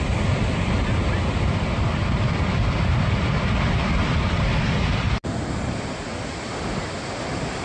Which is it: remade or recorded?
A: recorded